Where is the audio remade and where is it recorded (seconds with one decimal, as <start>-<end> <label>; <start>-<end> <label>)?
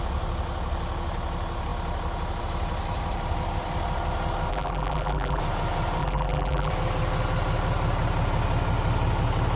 0.0-4.5 recorded; 4.5-5.4 remade; 5.4-6.0 recorded; 6.0-6.7 remade; 6.7-9.6 recorded